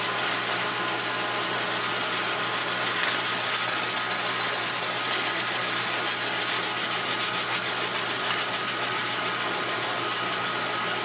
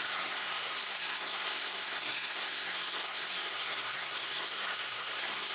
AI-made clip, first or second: second